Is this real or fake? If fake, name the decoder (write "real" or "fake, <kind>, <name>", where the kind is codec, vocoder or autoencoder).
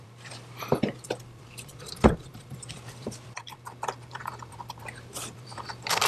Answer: fake, vocoder, BigVGAN v2